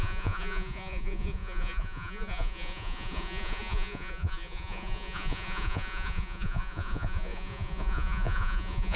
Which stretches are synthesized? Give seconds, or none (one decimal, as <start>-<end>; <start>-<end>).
0.0-9.0